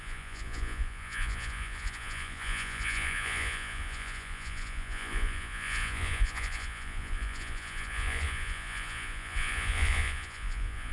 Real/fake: fake